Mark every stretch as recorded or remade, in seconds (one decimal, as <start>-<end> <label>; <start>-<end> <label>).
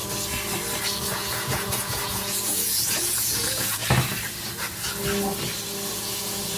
0.0-1.0 recorded; 1.0-3.8 remade; 3.8-5.9 recorded; 5.9-6.6 remade